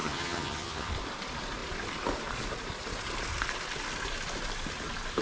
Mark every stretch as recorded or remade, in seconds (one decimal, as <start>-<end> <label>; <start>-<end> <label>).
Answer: 0.0-0.9 remade; 0.9-5.2 recorded